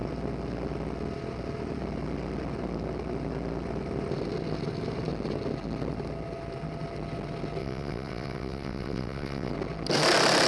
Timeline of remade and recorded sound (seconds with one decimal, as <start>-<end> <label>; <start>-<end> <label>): 0.0-7.6 recorded; 7.6-9.5 remade; 9.5-10.5 recorded